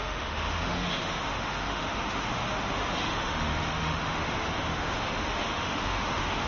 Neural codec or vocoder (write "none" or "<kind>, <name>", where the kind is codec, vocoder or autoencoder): autoencoder, DAC-VAE